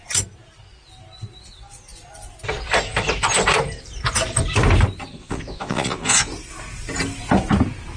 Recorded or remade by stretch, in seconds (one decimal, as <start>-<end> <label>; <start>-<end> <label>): 0.0-5.1 recorded; 5.1-6.3 remade; 6.3-8.0 recorded